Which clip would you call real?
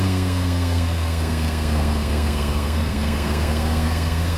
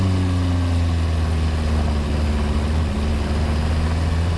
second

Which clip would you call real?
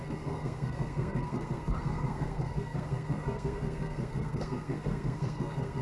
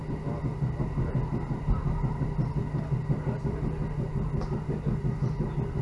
second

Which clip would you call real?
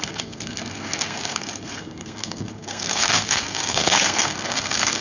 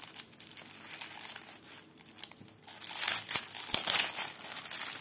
second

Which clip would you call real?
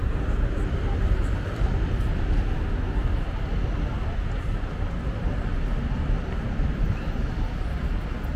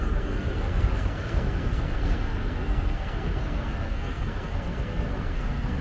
first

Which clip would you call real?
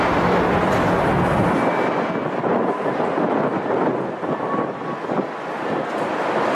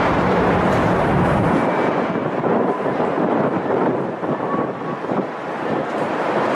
first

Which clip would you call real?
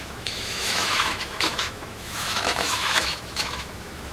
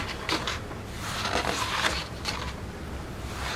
second